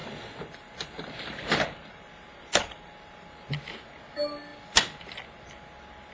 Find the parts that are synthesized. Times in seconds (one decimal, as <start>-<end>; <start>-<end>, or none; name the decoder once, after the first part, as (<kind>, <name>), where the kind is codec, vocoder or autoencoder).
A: 0.0-3.7 (vocoder, BigVGAN v2); 4.5-5.1